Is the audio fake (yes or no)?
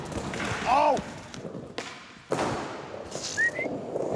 no